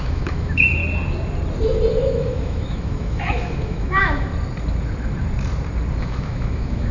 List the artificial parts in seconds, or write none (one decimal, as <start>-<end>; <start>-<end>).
0.0-0.8; 1.9-4.3; 6.0-6.9